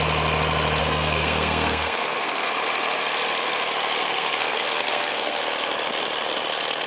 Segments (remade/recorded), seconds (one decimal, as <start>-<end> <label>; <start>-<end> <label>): 0.0-0.8 recorded; 0.8-2.5 remade; 2.5-4.0 recorded; 4.0-5.4 remade; 5.4-6.9 recorded